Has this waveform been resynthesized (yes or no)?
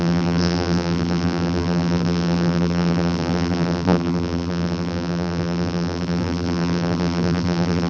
yes